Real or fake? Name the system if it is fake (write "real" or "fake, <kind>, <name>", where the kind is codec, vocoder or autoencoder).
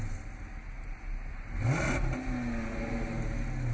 real